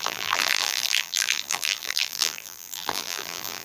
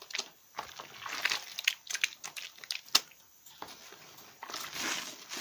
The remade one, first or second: first